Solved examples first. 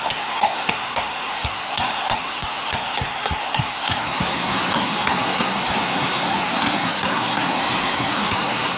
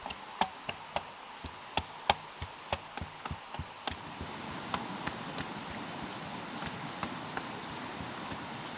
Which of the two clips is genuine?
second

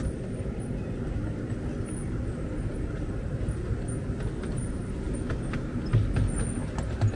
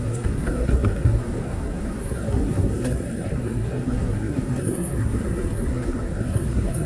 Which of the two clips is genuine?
first